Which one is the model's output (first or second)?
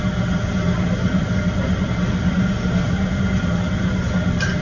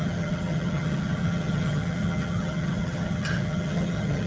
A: second